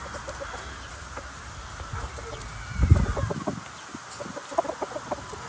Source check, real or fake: real